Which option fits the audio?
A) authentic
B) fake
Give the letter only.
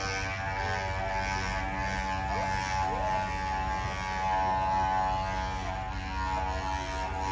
A